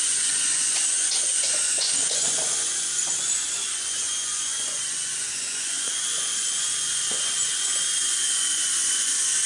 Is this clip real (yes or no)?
no